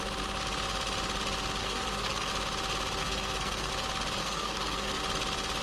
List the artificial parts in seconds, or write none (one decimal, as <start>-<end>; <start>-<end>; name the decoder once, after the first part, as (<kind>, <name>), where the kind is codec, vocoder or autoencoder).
1.6-2.3 (codec, SNAC); 3.0-3.7; 4.2-5.0